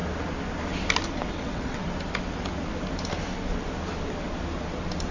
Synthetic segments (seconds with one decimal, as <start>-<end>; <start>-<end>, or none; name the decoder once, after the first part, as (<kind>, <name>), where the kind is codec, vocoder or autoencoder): 1.3-1.8 (vocoder, WaveNeXt)